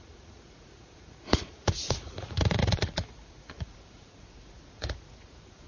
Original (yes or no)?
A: no